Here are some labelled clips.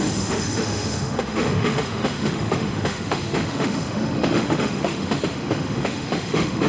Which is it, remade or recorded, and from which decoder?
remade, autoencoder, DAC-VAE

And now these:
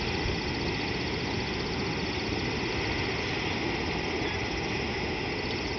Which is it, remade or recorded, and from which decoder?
recorded